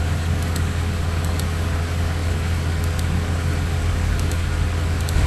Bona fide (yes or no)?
no